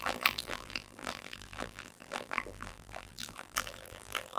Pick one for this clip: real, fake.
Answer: fake